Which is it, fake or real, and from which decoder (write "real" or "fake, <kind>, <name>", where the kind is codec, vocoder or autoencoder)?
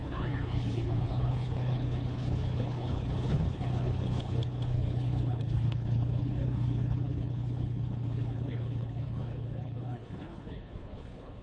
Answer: fake, codec, HILCodec